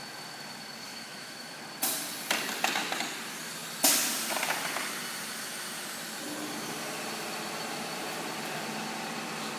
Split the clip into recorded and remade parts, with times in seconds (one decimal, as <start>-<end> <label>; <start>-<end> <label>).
0.0-0.9 recorded; 0.9-1.6 remade; 1.6-9.6 recorded